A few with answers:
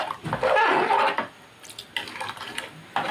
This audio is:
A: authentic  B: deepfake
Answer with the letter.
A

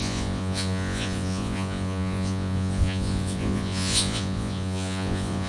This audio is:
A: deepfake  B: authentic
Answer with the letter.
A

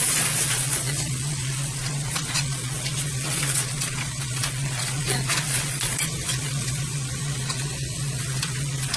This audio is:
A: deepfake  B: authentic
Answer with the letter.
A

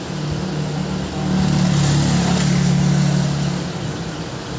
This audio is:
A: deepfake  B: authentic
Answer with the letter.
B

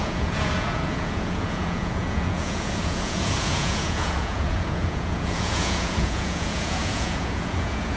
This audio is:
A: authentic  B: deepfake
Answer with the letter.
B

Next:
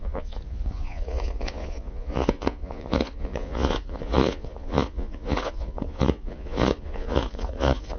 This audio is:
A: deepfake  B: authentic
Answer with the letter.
A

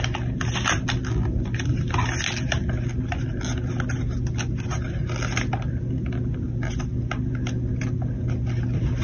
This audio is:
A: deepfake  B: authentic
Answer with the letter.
B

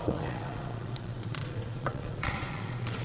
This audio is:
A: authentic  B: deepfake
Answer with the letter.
B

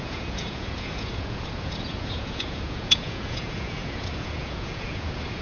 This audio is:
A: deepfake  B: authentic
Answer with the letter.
A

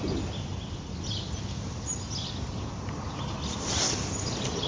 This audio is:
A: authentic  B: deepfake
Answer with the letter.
A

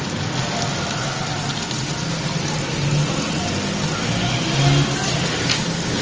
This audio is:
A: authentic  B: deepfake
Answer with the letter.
A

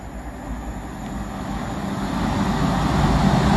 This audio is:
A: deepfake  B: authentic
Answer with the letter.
B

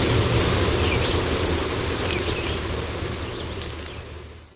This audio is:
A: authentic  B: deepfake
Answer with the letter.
A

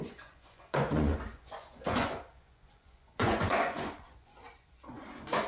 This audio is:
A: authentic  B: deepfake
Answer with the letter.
B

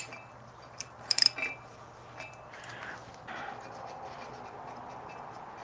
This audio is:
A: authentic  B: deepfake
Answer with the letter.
A